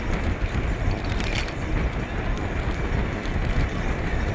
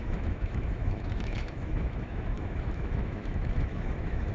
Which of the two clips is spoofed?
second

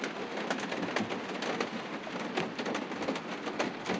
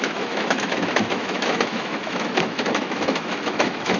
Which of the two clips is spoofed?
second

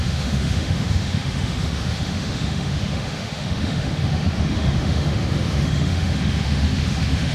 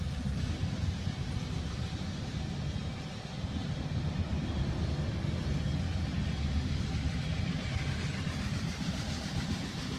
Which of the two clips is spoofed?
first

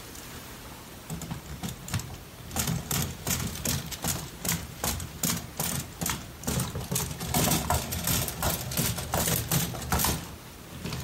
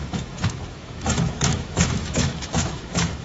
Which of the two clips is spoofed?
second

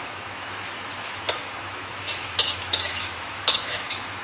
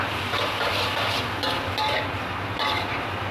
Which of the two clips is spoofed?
first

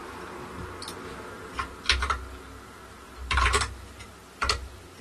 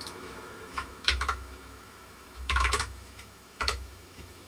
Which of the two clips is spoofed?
second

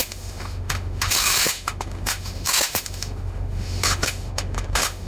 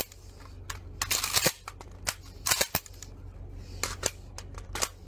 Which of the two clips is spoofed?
first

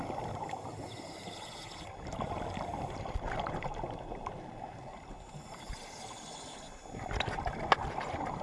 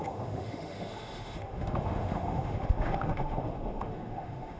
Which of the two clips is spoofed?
second